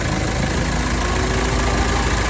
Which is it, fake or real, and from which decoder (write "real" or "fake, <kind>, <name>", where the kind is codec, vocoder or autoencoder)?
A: real